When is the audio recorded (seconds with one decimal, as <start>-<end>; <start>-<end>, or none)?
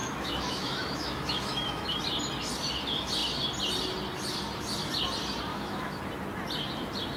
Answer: 2.0-5.5; 6.0-7.2